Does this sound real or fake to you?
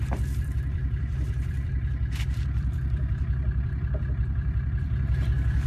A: fake